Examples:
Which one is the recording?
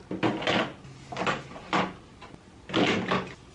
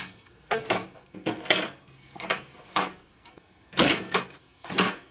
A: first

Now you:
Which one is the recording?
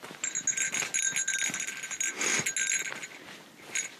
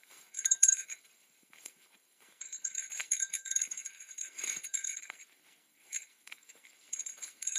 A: first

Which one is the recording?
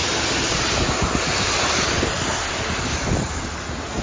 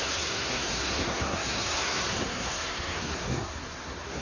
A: first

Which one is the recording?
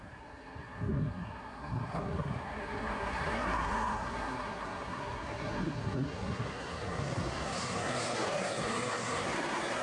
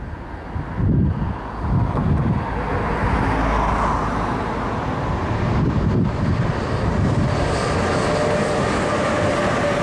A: second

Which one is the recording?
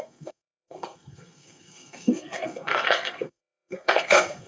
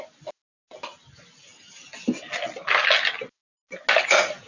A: second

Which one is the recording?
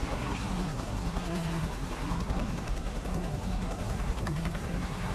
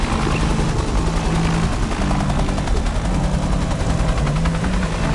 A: second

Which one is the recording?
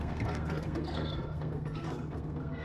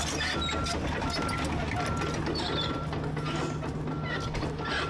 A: second